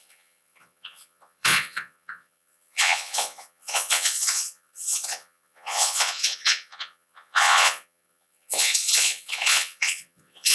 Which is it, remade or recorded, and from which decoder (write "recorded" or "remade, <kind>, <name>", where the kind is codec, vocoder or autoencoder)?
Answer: remade, vocoder, Vocos